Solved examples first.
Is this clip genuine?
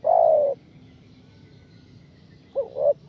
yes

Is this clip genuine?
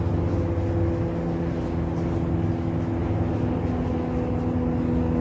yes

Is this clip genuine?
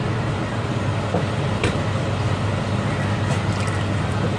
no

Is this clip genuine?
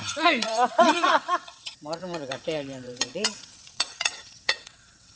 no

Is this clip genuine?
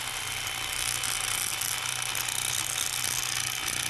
yes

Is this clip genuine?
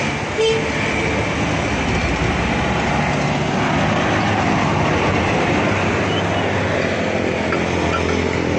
yes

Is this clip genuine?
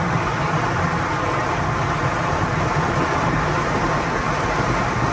yes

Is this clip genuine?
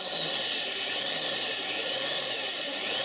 yes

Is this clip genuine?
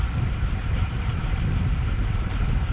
no